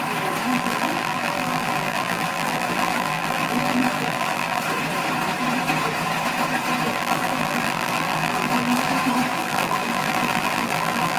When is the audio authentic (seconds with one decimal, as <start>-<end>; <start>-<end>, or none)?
0.0-0.5; 4.6-6.9; 8.9-9.3